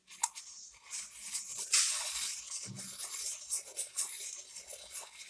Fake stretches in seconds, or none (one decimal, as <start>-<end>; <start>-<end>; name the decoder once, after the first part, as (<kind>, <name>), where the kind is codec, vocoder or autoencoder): none